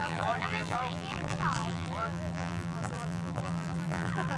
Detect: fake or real fake